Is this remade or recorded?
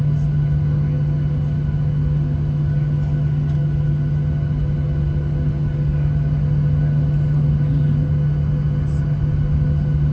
recorded